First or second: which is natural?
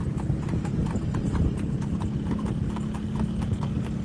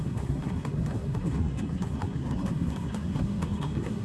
first